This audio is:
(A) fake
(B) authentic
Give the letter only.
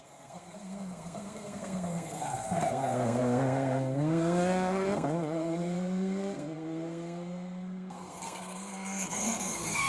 A